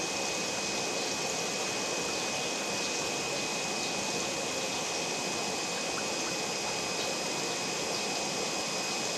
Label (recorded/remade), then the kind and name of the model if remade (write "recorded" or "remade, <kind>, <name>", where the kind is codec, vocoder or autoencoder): recorded